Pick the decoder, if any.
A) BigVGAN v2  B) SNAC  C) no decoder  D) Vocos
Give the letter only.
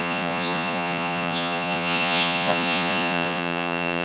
D